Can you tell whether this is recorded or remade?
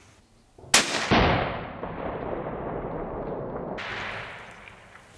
recorded